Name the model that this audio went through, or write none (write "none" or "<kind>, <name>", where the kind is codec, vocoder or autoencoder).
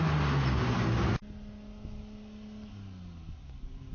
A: none